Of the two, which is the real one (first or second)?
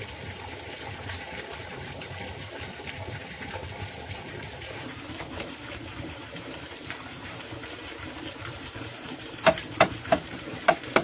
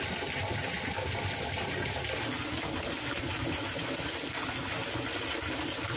second